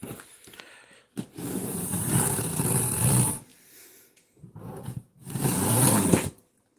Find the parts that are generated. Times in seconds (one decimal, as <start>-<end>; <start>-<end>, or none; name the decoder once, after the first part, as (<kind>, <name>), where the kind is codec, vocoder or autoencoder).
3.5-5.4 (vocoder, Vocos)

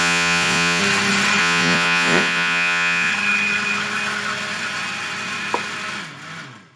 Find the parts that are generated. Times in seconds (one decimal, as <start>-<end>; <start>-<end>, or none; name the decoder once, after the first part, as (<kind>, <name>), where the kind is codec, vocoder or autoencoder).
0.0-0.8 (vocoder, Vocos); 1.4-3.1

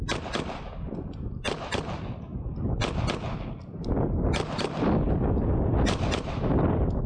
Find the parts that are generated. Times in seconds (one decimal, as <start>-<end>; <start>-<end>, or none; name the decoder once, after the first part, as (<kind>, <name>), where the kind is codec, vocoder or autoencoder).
none

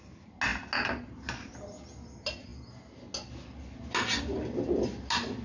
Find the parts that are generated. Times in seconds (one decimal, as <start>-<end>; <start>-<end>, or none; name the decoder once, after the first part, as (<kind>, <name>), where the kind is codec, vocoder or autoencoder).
none

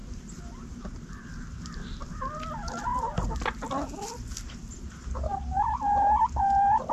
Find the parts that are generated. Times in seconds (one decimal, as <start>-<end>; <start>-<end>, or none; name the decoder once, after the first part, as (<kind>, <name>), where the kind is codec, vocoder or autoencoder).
none